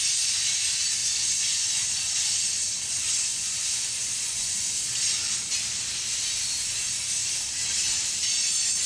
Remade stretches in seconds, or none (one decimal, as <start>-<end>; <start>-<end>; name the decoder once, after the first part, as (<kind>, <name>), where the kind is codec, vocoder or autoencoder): 1.0-1.8 (vocoder, Vocos); 3.3-4.7